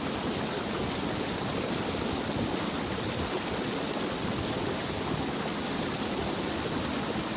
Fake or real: real